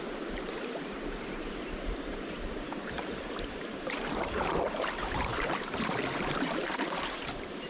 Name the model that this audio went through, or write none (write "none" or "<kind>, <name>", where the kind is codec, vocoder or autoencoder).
vocoder, BigVGAN v2